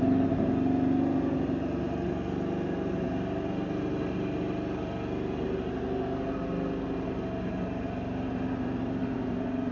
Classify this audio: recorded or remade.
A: recorded